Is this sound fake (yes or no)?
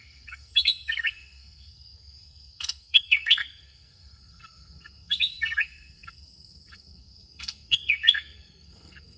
yes